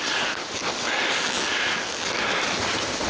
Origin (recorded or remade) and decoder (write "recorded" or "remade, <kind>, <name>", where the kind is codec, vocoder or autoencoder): recorded